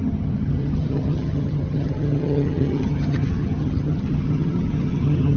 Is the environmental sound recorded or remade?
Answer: remade